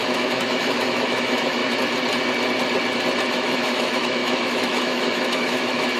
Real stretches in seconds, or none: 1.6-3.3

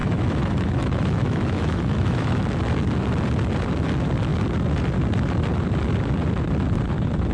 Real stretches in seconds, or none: 2.4-7.3